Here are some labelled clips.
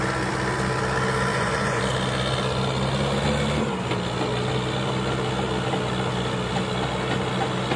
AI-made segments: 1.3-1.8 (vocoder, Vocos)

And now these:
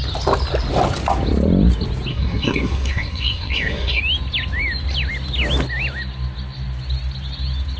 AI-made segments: 2.1-4.0 (codec, SNAC)

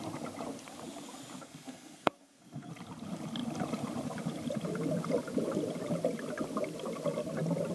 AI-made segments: 1.4-2.7 (codec, SNAC)

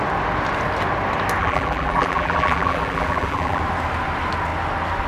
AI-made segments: 1.4-3.6 (vocoder, BigVGAN v2)

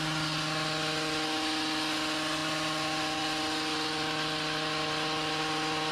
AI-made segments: none